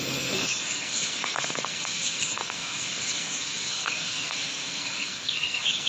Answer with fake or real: fake